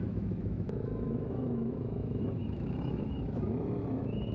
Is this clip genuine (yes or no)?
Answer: no